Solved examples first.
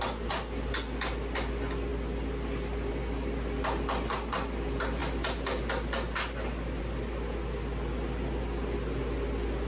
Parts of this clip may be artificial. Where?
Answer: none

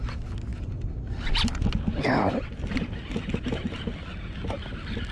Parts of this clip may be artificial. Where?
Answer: none

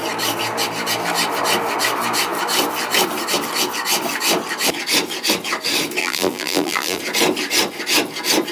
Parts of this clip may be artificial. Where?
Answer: 6.0-7.0 (vocoder, BigVGAN v2)

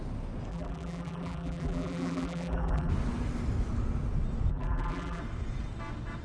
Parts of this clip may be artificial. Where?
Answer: 0.5-2.9 (vocoder, BigVGAN v2); 4.5-5.2

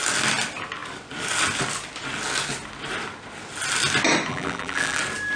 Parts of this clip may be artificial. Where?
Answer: 4.3-5.0 (vocoder, BigVGAN v2)

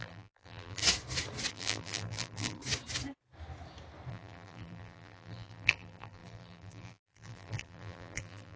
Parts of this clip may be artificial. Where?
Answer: 0.0-0.8 (vocoder, BigVGAN v2); 1.5-2.6; 4.1-8.6

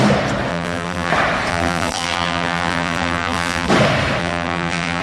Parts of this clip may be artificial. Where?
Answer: 0.5-1.1 (vocoder, BigVGAN v2); 1.5-3.7; 4.2-5.0

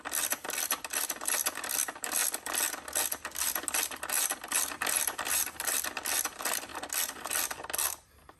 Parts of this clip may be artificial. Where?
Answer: 0.0-2.2 (vocoder, BigVGAN v2); 3.7-6.7